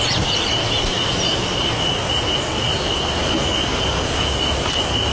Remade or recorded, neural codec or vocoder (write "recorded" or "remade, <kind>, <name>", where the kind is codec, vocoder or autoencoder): recorded